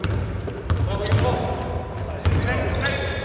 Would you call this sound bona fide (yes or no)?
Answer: yes